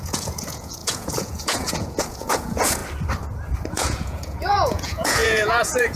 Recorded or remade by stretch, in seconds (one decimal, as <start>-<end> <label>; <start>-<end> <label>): 0.0-2.8 remade; 2.8-3.7 recorded; 3.7-6.0 remade